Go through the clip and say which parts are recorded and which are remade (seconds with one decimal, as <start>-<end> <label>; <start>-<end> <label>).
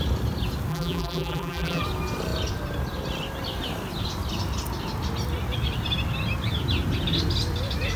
0.0-0.7 recorded; 0.7-1.8 remade; 1.8-8.0 recorded